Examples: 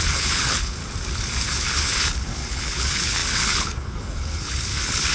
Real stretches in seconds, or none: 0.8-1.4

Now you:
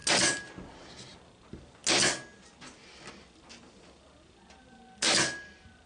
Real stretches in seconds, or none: 0.0-5.9

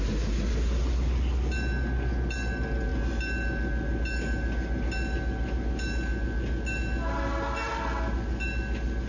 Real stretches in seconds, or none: 0.0-9.1

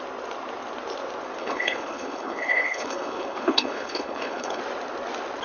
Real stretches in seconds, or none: 0.0-1.4; 4.6-5.4

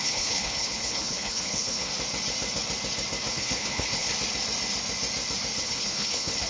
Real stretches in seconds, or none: 1.9-3.3; 4.1-5.6

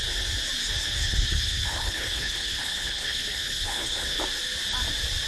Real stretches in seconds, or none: 0.0-1.0; 4.2-5.3

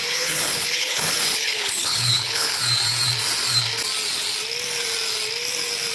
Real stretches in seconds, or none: 2.6-5.9